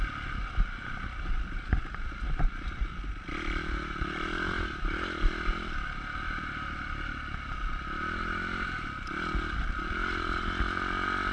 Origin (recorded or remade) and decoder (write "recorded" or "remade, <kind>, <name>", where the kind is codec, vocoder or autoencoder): recorded